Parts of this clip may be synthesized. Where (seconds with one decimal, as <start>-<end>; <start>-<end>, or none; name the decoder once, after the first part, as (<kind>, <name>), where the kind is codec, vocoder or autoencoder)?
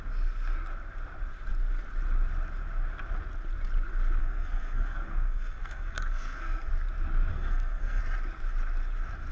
4.2-6.7 (codec, SNAC); 7.3-8.0